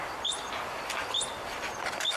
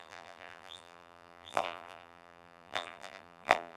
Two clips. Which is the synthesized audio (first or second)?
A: second